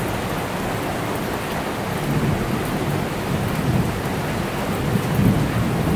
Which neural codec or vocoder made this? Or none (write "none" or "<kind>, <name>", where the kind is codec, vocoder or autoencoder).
none